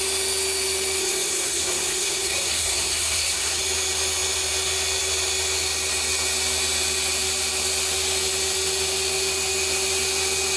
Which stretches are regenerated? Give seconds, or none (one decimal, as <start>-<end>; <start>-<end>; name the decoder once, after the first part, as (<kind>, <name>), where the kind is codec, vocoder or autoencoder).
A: 1.0-3.6 (codec, SNAC)